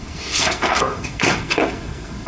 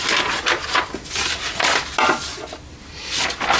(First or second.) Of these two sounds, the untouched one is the second